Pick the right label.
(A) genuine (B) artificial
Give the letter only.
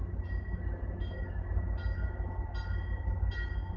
A